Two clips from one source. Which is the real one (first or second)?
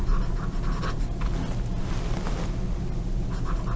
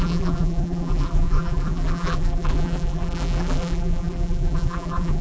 first